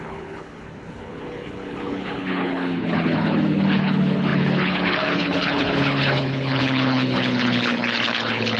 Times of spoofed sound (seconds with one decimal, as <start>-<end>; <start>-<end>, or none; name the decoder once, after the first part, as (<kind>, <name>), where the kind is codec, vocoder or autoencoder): 0.0-8.6 (codec, HILCodec)